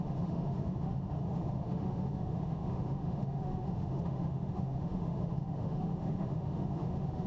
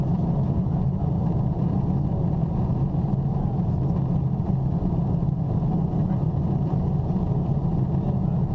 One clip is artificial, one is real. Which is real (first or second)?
second